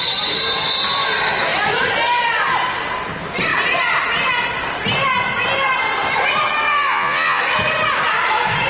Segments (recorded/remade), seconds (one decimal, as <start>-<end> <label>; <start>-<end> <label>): 0.0-6.7 recorded; 6.7-7.4 remade; 7.4-8.7 recorded